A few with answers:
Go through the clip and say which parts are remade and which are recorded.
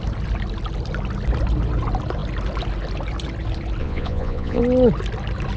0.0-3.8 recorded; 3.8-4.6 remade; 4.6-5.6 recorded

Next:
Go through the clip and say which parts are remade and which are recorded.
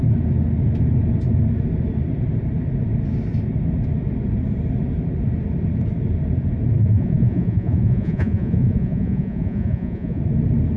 0.0-6.8 recorded; 6.8-10.2 remade; 10.2-10.8 recorded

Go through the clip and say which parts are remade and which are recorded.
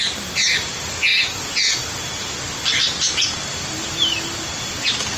0.0-5.2 recorded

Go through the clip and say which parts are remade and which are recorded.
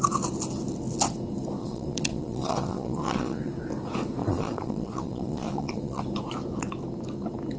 0.0-1.6 recorded; 1.6-3.5 remade; 3.5-4.2 recorded; 4.2-6.0 remade; 6.0-7.6 recorded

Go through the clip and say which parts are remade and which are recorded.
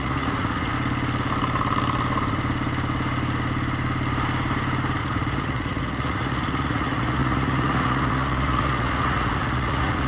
0.0-0.7 remade; 0.7-5.0 recorded; 5.0-10.1 remade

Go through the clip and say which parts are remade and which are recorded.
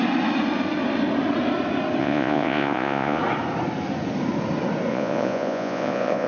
0.0-2.0 recorded; 2.0-3.2 remade; 3.2-4.9 recorded; 4.9-6.3 remade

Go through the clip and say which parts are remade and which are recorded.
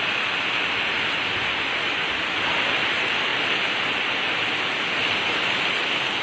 0.0-6.2 recorded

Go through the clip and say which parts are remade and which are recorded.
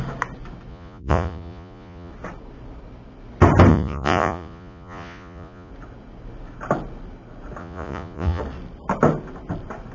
0.0-0.7 recorded; 0.7-2.1 remade; 2.1-3.7 recorded; 3.7-5.7 remade; 5.7-7.6 recorded; 7.6-8.4 remade; 8.4-9.9 recorded